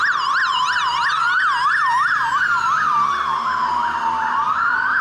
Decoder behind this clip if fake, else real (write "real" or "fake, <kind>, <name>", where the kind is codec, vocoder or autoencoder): real